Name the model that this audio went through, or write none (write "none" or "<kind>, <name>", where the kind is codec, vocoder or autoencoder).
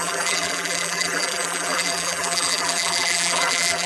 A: vocoder, BigVGAN v2